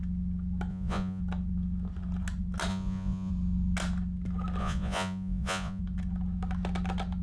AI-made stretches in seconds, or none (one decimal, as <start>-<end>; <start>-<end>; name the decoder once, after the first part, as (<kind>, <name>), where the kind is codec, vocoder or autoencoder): 0.7-1.2 (vocoder, Vocos); 2.7-3.3; 4.6-5.8

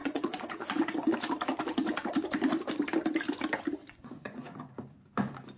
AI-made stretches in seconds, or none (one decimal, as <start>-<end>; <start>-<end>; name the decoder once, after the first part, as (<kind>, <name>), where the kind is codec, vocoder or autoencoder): 0.0-1.1 (vocoder, Vocos); 3.8-4.6

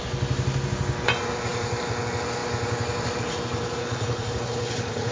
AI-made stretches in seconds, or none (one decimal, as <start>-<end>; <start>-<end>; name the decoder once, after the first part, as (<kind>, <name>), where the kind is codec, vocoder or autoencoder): 3.8-5.1 (codec, HILCodec)

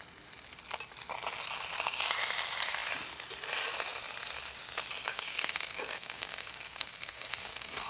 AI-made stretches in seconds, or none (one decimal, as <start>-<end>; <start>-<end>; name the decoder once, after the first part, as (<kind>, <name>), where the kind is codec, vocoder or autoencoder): 5.1-7.9 (codec, SNAC)